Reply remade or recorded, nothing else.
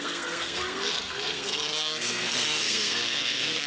remade